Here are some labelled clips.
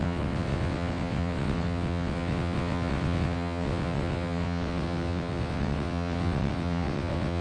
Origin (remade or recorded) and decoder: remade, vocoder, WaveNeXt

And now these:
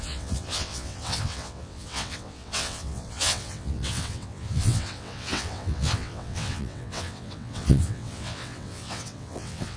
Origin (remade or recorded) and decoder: remade, vocoder, WaveNeXt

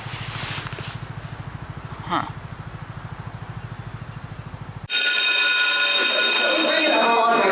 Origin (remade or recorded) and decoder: recorded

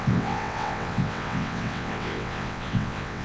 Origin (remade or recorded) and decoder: remade, vocoder, WaveNeXt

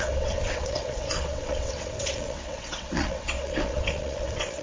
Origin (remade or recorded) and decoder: remade, vocoder, WaveNeXt